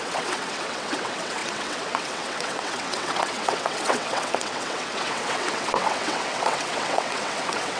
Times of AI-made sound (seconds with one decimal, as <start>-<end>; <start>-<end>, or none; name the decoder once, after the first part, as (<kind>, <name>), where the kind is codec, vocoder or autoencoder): 0.0-7.8 (vocoder, WaveNeXt)